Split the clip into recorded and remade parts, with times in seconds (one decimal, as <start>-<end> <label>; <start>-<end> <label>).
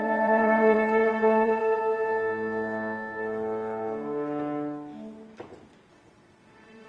0.0-1.8 remade; 1.8-5.9 recorded; 5.9-6.9 remade